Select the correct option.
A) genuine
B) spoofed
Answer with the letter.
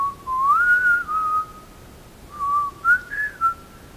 A